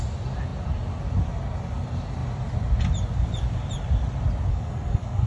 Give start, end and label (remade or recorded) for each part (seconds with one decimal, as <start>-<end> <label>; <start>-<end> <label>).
0.0-4.5 recorded; 4.5-5.3 remade